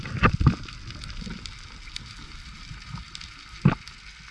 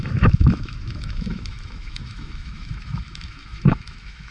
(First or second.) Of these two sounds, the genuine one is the first